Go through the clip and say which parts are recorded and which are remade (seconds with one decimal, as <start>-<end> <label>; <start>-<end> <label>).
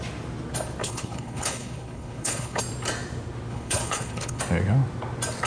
0.0-0.8 recorded; 0.8-2.6 remade; 2.6-3.5 recorded; 3.5-4.4 remade; 4.4-5.5 recorded